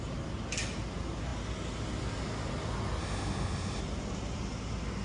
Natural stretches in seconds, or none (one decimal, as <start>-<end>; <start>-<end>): 0.0-3.0; 3.8-5.0